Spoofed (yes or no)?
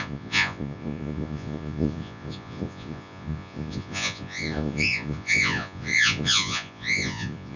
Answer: yes